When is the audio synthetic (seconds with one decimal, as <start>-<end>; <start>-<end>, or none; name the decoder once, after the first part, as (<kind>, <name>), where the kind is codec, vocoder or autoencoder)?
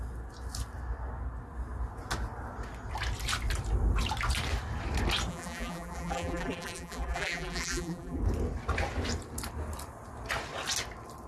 5.3-8.2 (vocoder, BigVGAN v2)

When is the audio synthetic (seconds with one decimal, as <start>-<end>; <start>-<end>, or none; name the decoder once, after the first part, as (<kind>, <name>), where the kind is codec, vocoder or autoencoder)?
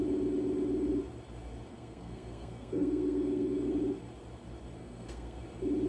1.7-3.7 (codec, SNAC); 4.8-5.4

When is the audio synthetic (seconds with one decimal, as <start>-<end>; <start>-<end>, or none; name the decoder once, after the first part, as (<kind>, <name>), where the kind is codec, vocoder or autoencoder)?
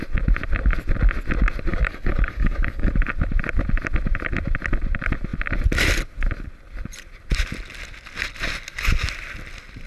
1.7-2.9 (codec, DAC)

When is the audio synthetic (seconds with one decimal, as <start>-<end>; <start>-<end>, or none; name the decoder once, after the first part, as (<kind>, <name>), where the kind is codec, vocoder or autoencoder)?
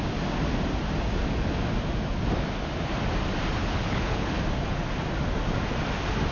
3.6-4.3 (codec, HILCodec)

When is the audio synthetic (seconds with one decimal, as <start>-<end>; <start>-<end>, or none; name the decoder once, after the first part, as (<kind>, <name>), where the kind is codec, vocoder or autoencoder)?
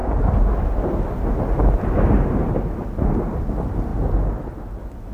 3.9-4.5 (vocoder, BigVGAN v2)